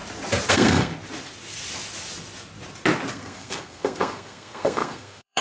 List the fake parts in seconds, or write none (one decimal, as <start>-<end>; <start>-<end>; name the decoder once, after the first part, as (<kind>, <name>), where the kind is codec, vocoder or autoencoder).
0.5-0.9 (codec, SNAC); 3.1-5.4